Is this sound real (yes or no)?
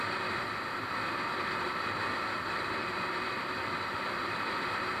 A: yes